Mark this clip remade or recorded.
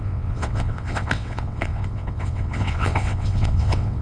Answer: remade